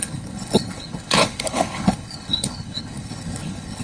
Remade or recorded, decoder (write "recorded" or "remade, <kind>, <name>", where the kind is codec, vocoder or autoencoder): remade, codec, HILCodec